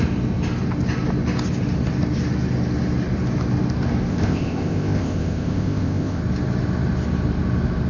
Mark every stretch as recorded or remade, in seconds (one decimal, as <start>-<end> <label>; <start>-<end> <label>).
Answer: 0.0-4.1 recorded; 4.1-6.2 remade; 6.2-7.9 recorded

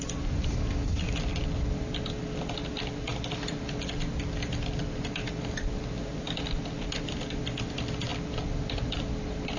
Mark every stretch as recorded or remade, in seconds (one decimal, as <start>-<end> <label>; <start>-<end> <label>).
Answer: 0.0-9.6 recorded

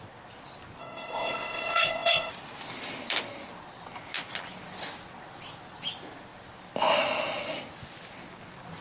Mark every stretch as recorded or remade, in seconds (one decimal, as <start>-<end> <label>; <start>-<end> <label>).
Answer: 0.0-0.8 recorded; 0.8-2.3 remade; 2.3-8.8 recorded

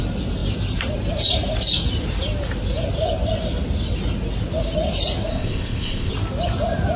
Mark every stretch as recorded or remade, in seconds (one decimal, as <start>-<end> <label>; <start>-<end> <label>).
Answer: 0.0-5.3 recorded; 5.3-6.1 remade; 6.1-7.0 recorded

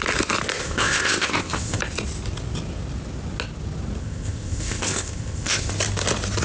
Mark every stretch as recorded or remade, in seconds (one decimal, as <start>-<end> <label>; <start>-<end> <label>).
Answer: 0.0-0.6 recorded; 0.6-1.8 remade; 1.8-4.0 recorded; 4.0-5.7 remade; 5.7-6.4 recorded

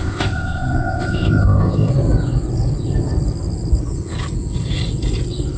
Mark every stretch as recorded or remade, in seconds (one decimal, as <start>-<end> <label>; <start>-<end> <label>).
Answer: 0.0-1.9 remade; 1.9-5.6 recorded